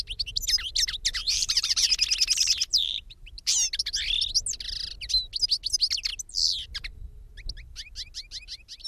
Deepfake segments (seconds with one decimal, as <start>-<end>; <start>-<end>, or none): 1.2-1.9; 2.7-3.5